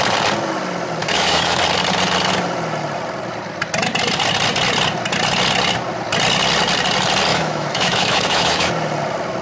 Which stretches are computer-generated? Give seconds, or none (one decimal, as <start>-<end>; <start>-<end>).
1.0-1.6; 7.3-8.7

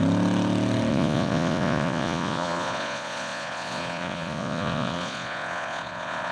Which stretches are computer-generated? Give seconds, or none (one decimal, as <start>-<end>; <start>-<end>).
0.9-6.3

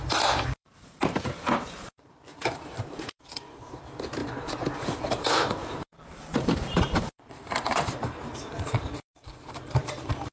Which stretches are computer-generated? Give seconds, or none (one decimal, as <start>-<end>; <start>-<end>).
0.0-10.3

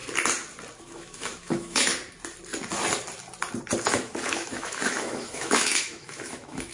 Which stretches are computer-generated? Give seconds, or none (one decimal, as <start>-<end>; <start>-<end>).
0.8-1.9; 3.8-6.7

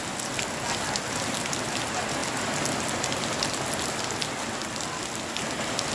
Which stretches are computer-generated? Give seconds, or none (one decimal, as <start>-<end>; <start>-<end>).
none

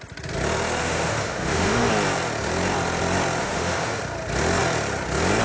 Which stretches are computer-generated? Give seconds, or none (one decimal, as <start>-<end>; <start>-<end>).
0.8-1.9; 3.4-4.0